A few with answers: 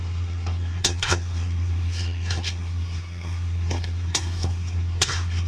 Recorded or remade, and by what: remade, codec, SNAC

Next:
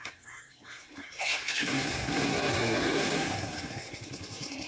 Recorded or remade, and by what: remade, codec, SNAC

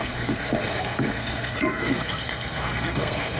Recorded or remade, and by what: remade, codec, SNAC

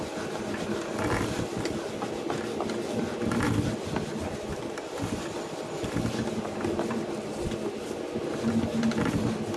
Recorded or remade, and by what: recorded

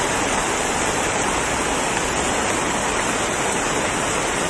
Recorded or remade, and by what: recorded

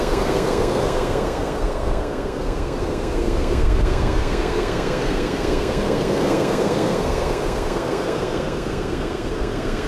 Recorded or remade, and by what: remade, codec, SNAC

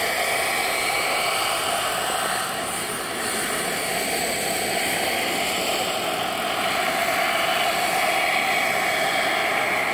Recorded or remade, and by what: recorded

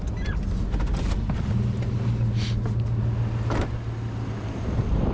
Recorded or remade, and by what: recorded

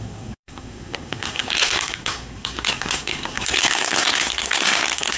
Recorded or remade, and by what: remade, codec, SNAC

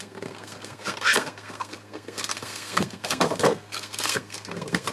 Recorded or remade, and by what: remade, codec, SNAC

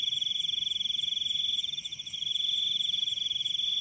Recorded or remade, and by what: recorded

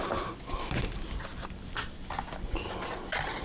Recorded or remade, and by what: recorded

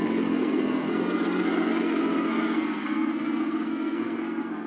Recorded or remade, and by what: remade, codec, SNAC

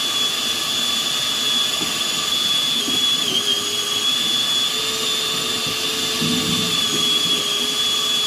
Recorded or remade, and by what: recorded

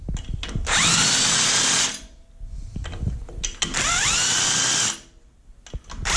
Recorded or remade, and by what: recorded